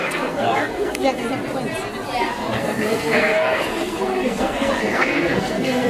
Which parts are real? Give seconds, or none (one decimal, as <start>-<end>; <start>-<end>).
1.2-2.2